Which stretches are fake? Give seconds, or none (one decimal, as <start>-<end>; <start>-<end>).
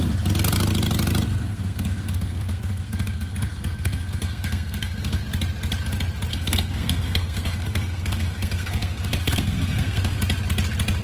1.4-5.2; 6.3-10.2